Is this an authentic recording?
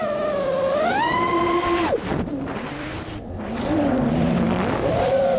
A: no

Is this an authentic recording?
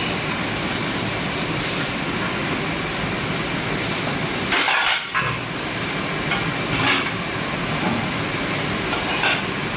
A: yes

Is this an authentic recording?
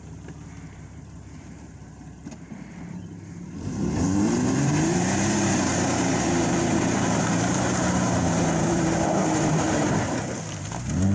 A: no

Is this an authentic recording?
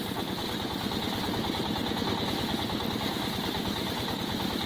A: yes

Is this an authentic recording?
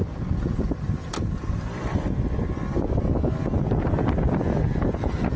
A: no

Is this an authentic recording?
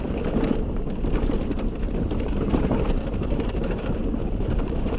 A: no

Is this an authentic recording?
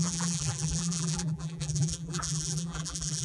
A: no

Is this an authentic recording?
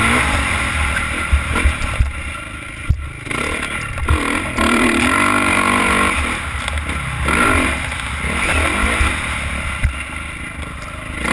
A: yes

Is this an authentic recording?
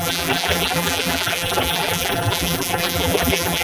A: no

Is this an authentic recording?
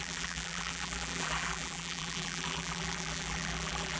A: no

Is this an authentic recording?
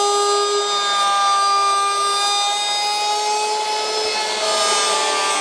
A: yes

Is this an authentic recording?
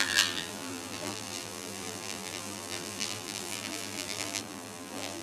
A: no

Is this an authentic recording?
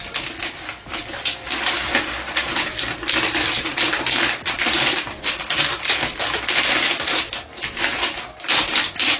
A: yes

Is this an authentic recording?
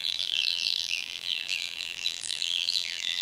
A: no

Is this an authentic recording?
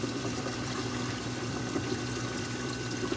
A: no